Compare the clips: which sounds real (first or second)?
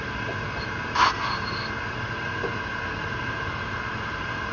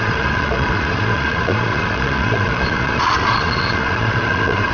first